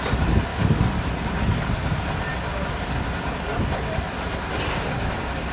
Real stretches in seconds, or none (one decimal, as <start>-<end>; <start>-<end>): 0.0-0.5; 1.0-5.5